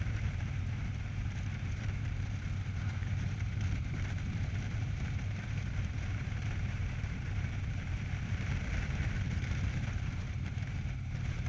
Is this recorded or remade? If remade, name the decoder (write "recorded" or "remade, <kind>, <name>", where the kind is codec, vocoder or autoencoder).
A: remade, vocoder, BigVGAN v2